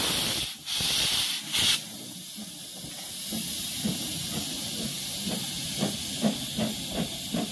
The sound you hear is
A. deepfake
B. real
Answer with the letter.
B